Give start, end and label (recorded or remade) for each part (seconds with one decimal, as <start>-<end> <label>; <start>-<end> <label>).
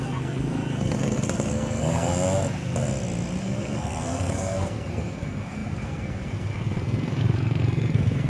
0.0-2.1 remade; 2.1-3.4 recorded; 3.4-8.3 remade